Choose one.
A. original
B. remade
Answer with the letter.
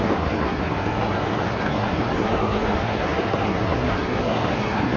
B